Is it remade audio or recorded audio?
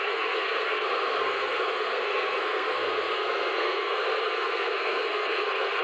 remade